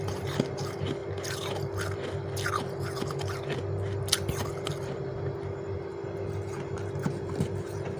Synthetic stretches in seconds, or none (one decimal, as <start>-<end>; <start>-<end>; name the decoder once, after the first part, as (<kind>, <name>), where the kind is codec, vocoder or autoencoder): none